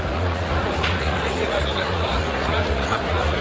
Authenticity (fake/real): fake